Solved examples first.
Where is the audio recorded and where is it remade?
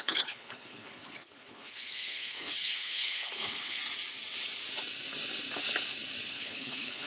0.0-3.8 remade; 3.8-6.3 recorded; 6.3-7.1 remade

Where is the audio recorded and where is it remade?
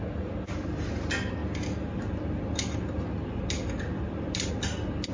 0.0-5.1 recorded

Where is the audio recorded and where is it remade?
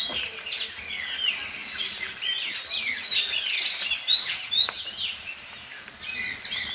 0.0-6.7 recorded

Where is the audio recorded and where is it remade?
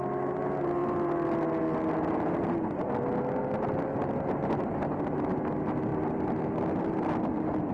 0.0-5.9 recorded; 5.9-7.7 remade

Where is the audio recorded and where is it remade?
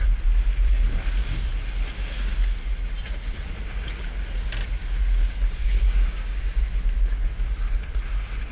0.0-5.6 recorded; 5.6-6.4 remade; 6.4-8.5 recorded